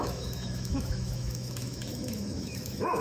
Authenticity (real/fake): fake